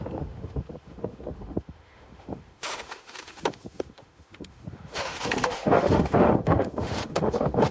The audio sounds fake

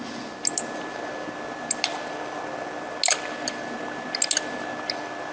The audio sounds real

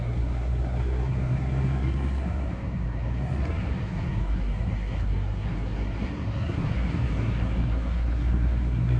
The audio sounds fake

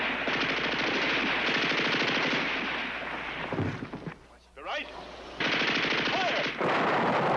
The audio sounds real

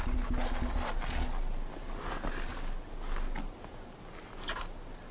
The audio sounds real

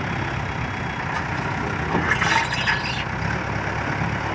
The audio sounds real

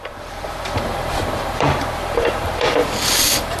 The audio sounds fake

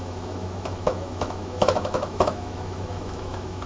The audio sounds fake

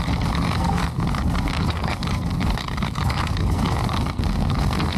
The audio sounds fake